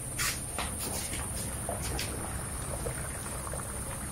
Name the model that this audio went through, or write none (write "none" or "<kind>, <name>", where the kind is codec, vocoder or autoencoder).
none